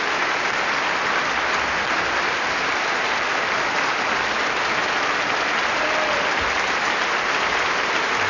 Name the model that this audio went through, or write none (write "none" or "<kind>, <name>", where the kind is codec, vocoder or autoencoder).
none